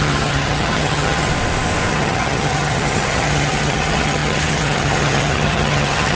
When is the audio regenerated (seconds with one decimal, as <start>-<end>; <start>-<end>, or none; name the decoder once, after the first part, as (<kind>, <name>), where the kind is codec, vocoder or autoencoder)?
0.0-1.3 (vocoder, HiFi-GAN); 1.9-6.1